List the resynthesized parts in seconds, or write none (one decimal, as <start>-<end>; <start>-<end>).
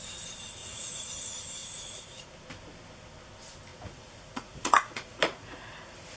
0.6-1.1; 1.6-2.3; 3.7-6.2